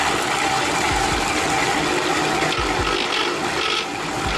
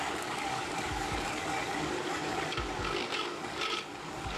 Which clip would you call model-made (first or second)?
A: second